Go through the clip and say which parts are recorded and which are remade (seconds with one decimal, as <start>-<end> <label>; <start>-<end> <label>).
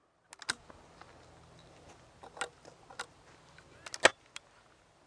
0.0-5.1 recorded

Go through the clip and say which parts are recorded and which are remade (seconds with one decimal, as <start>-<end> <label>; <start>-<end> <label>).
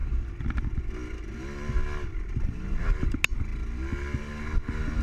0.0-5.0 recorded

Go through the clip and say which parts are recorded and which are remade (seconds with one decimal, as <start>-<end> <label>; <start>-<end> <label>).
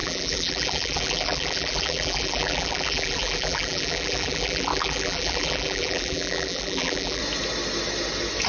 0.0-7.2 remade; 7.2-8.5 recorded